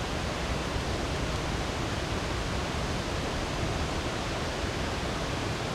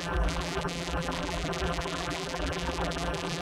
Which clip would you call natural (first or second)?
first